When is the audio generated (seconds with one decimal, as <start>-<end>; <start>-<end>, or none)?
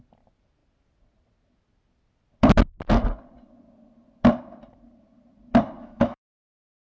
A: 5.8-6.9